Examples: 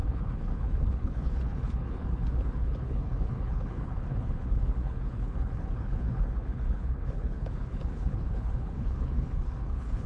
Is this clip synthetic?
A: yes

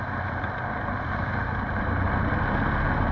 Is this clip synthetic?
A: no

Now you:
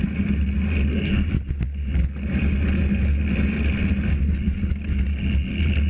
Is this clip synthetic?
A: no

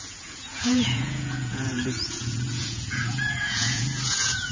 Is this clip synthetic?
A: yes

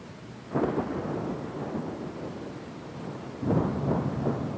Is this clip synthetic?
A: yes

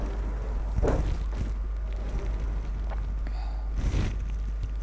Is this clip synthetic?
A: no